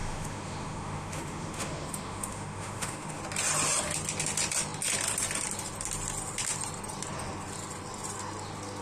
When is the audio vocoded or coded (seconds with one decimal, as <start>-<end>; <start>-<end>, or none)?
0.0-3.2